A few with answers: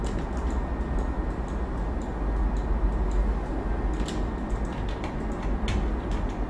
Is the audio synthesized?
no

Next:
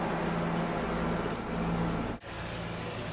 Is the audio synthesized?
no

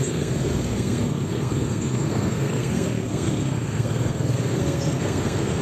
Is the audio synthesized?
yes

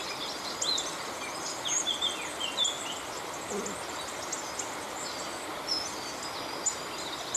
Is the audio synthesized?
no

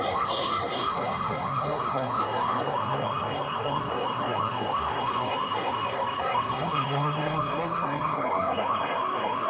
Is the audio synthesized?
yes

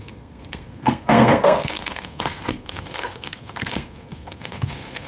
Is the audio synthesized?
yes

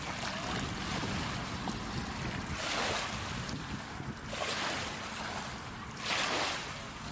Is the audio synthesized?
no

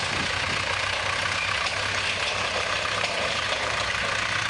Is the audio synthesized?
no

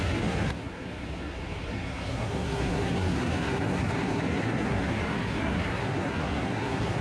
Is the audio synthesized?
yes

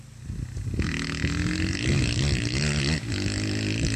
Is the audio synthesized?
no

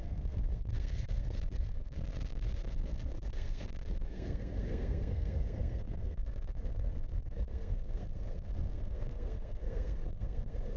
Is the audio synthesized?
yes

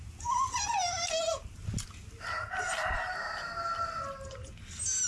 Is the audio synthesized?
no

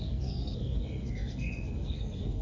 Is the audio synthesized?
yes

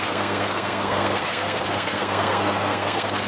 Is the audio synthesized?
yes